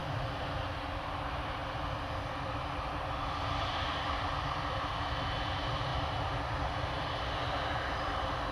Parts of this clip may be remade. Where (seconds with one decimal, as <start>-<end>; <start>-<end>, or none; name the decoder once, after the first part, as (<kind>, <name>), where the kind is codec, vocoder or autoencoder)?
0.0-5.9 (vocoder, BigVGAN v2); 7.7-8.5